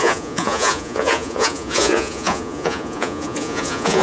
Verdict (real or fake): fake